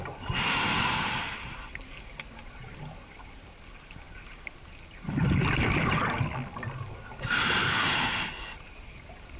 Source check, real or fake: real